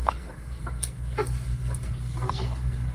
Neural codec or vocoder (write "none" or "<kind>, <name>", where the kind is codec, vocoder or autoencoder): codec, SNAC